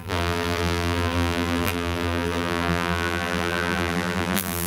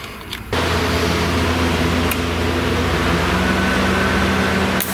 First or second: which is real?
second